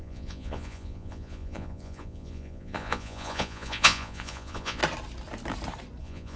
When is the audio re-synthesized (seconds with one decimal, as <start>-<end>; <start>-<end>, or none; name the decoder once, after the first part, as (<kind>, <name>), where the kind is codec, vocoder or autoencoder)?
0.0-4.8 (vocoder, Vocos); 6.0-6.4